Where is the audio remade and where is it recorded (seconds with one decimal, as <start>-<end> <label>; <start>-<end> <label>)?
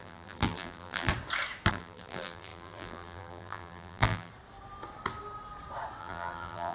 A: 0.0-1.1 remade; 1.1-1.7 recorded; 1.7-4.3 remade; 4.3-6.0 recorded; 6.0-6.7 remade